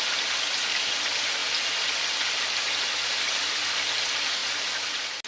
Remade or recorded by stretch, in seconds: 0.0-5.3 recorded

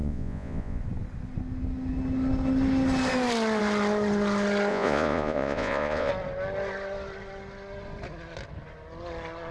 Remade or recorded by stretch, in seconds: 0.0-0.8 remade; 0.8-4.7 recorded; 4.7-6.1 remade; 6.1-9.5 recorded

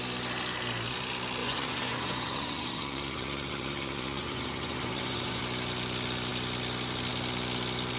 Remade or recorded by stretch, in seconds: 0.0-1.4 recorded; 1.4-5.4 remade; 5.4-8.0 recorded

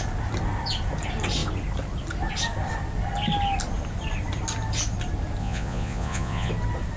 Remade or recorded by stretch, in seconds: 0.0-5.4 recorded; 5.4-6.5 remade; 6.5-7.0 recorded